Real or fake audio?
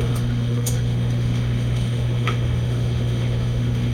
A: fake